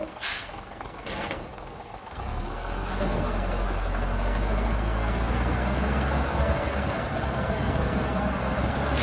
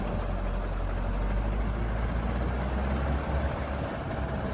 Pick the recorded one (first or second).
second